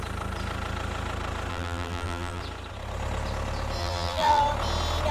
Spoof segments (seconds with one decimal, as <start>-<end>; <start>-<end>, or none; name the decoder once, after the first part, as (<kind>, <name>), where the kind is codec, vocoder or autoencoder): 1.5-2.4 (vocoder, BigVGAN v2); 3.8-4.4

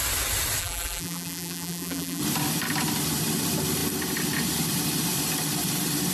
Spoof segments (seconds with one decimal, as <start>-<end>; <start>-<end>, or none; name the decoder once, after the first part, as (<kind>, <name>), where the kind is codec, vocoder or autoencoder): 0.6-2.2 (vocoder, BigVGAN v2)

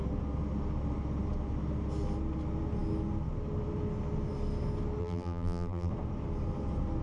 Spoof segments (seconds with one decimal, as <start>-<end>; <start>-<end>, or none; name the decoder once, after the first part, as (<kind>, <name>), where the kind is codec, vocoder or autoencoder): 5.0-5.9 (vocoder, BigVGAN v2)

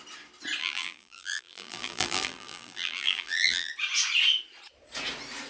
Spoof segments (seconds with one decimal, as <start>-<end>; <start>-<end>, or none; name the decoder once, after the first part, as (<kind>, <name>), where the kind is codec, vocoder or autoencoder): 0.6-3.7 (vocoder, BigVGAN v2)

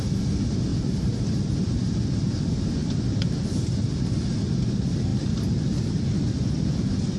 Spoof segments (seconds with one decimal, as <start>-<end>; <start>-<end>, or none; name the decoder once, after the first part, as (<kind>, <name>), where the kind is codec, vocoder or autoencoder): 0.7-2.0 (vocoder, BigVGAN v2); 2.8-3.9

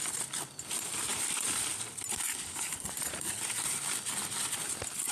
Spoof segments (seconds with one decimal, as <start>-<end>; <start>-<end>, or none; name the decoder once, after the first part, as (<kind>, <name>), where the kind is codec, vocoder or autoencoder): none